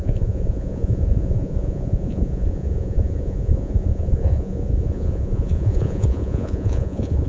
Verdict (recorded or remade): remade